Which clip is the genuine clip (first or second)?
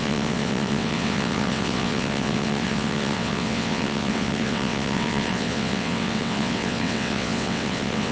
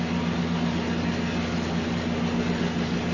second